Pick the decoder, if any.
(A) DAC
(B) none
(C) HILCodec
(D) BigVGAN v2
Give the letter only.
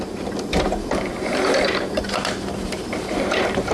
D